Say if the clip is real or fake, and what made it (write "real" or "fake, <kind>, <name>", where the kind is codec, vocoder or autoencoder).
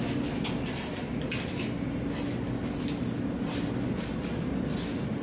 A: real